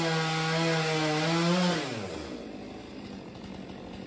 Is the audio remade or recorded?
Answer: recorded